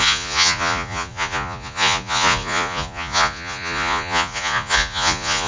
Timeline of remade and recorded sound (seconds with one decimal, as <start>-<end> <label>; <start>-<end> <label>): 0.0-5.5 remade